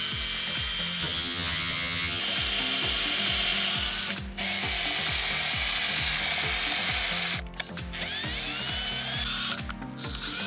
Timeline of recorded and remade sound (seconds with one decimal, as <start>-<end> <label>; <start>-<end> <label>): 0.0-1.0 recorded; 1.0-2.2 remade; 2.2-10.5 recorded